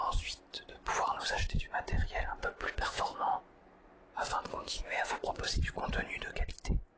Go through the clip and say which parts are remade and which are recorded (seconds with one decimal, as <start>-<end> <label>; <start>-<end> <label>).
0.0-2.4 recorded; 2.4-3.4 remade; 3.4-4.5 recorded; 4.5-5.4 remade; 5.4-7.0 recorded